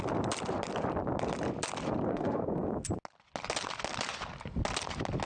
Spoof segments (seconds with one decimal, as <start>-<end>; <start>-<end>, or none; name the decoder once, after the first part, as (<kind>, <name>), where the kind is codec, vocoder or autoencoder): 2.1-2.7 (codec, SNAC)